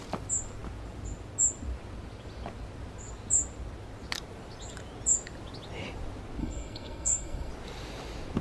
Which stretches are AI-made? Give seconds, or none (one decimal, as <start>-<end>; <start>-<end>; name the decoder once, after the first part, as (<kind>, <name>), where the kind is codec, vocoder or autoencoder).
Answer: 6.4-7.5 (codec, SNAC)